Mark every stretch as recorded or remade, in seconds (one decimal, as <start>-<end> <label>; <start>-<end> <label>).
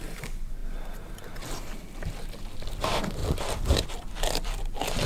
0.0-5.1 recorded